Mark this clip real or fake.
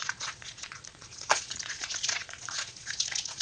fake